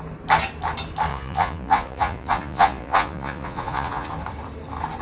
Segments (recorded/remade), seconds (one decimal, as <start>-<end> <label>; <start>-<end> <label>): 0.0-1.1 recorded; 1.1-4.1 remade; 4.1-5.0 recorded